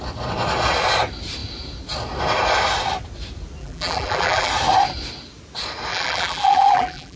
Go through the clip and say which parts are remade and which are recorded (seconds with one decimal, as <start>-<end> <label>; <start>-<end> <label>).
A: 0.0-3.6 recorded; 3.6-4.5 remade; 4.5-5.9 recorded; 5.9-7.2 remade